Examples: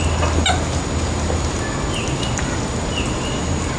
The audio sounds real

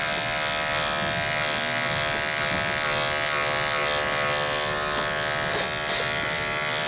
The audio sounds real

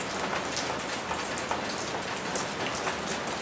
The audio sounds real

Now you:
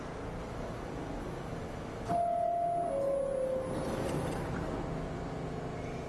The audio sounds real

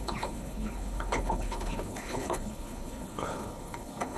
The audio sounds fake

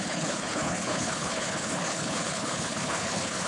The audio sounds fake